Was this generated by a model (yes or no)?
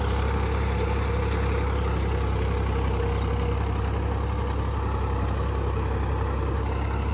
no